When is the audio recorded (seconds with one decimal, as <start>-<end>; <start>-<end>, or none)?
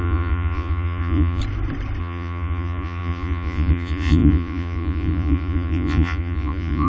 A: 1.4-2.0